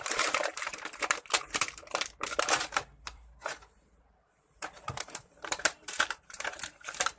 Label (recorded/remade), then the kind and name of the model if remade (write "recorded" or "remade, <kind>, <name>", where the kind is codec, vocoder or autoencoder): remade, vocoder, BigVGAN v2